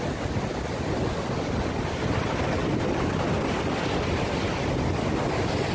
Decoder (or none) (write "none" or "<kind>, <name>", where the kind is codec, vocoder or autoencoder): none